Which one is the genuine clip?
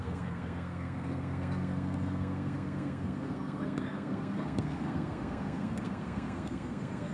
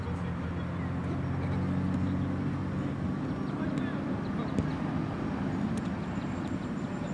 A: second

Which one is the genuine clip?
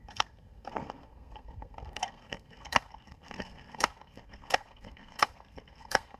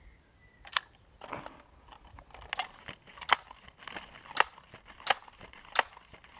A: second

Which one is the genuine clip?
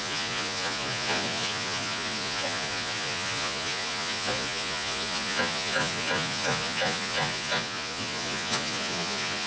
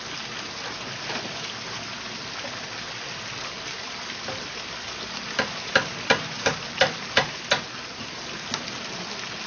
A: second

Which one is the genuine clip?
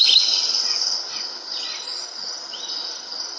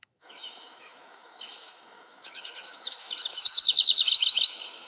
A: first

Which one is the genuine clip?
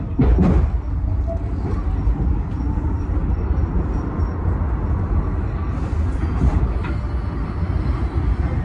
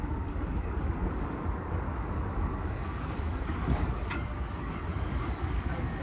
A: first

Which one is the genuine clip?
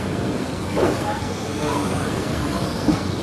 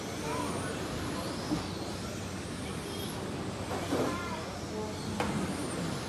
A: second